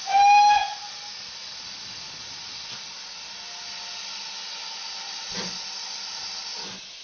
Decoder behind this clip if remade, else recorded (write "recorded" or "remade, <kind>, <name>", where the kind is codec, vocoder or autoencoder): recorded